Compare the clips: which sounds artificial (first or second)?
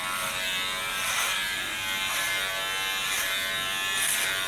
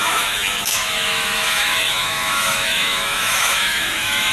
second